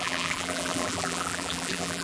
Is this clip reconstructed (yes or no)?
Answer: yes